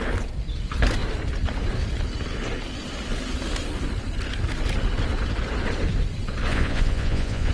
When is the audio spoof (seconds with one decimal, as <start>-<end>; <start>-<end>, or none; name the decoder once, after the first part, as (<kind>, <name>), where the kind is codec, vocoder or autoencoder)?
6.5-7.5 (vocoder, Vocos)